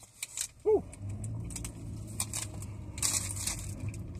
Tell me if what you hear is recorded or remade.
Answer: recorded